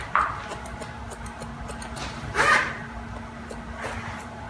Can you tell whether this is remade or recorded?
recorded